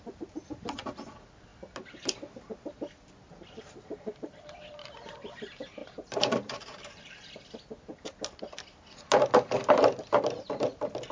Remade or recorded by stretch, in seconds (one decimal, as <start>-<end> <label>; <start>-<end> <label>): 0.0-5.8 recorded; 5.8-7.1 remade; 7.1-11.1 recorded